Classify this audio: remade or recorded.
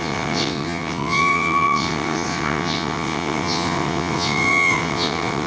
remade